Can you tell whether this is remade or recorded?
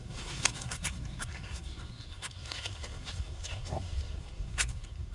remade